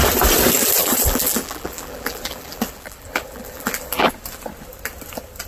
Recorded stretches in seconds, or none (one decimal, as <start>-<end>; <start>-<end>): 0.0-0.8; 4.1-5.5